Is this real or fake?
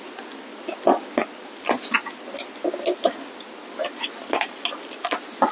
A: real